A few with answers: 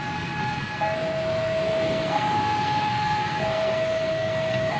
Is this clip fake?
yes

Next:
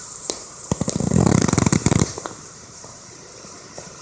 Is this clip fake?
yes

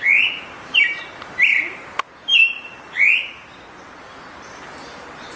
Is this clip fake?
yes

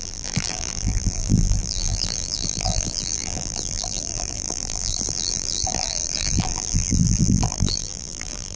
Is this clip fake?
yes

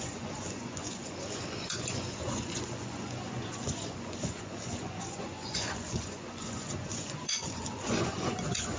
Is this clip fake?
yes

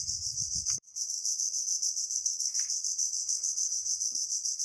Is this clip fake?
yes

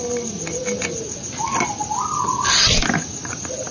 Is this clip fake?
no